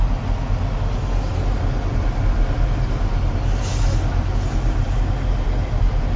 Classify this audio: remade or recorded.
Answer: recorded